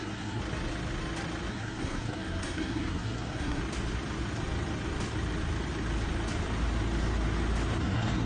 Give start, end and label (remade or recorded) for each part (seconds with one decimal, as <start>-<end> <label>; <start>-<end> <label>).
0.0-0.4 remade; 0.4-1.5 recorded; 1.5-3.6 remade; 3.6-7.8 recorded; 7.8-8.3 remade